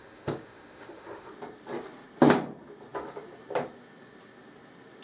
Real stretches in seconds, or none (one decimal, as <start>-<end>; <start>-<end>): 1.3-5.0